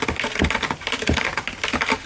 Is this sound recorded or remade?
recorded